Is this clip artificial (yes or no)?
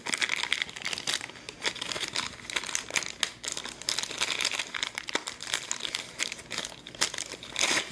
no